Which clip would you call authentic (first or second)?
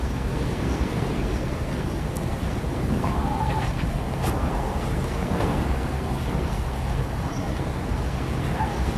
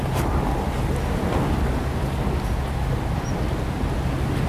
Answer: second